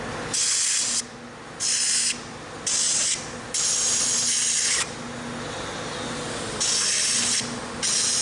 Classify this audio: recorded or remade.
recorded